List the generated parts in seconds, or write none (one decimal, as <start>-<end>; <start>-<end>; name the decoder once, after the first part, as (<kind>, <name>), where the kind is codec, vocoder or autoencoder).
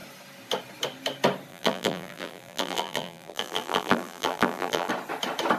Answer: 1.5-4.9 (vocoder, BigVGAN v2)